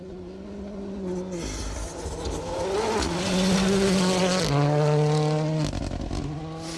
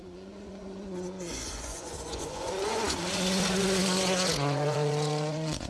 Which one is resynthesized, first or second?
second